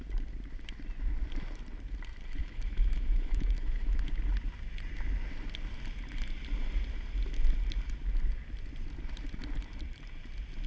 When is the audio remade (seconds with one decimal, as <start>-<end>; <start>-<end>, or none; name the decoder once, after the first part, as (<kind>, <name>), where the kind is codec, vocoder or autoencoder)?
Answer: 2.4-4.1 (autoencoder, DAC-VAE)